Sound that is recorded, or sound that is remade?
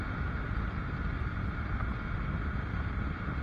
recorded